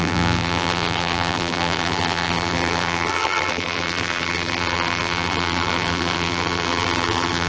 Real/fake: fake